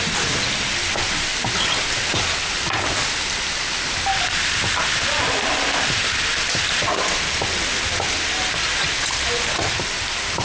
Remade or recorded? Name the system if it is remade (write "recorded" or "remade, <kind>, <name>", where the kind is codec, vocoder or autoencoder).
recorded